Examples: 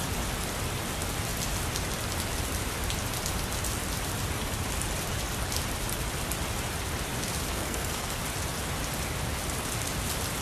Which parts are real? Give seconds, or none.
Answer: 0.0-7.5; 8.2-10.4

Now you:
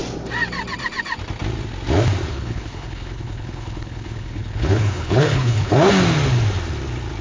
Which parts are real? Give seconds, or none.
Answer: 0.0-2.3; 5.9-7.2

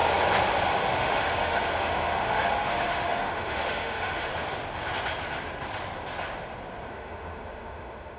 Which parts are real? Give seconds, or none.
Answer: 0.0-0.8; 4.3-6.9

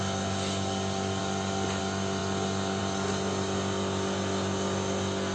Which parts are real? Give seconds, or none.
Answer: 0.0-1.2; 1.8-5.3

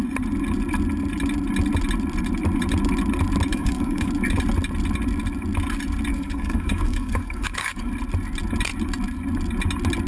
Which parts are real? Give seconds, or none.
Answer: 0.0-3.5; 4.1-6.1; 7.9-10.1

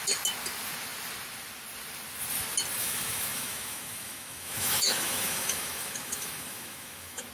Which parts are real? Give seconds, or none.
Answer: 0.0-2.8

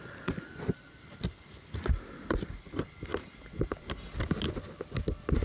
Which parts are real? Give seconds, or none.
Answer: 0.0-5.4